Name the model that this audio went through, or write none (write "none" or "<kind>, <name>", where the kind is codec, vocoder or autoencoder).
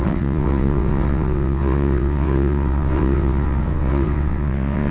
vocoder, WaveNeXt